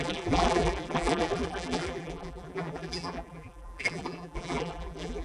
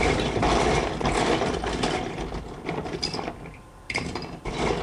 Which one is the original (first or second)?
second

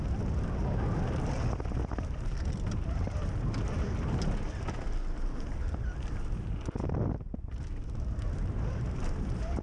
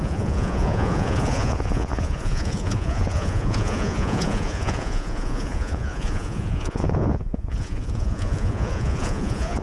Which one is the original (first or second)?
first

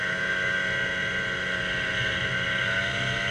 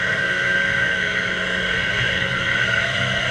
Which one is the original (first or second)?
first